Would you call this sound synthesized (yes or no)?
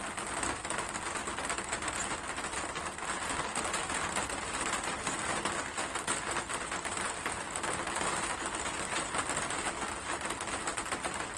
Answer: no